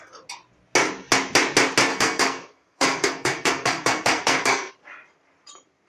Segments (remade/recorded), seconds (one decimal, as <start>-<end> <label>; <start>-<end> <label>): 0.0-1.9 recorded; 1.9-4.7 remade; 4.7-5.9 recorded